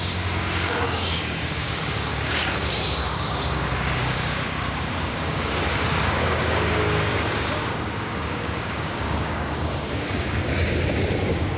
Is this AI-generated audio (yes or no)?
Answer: yes